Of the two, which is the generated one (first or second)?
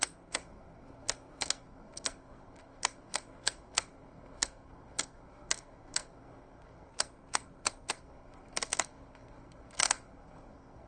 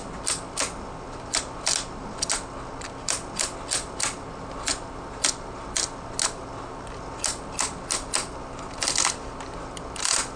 first